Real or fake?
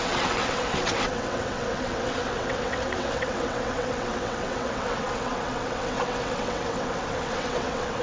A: fake